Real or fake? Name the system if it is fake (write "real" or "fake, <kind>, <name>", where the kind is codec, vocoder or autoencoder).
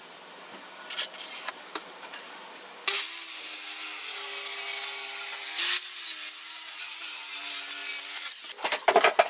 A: real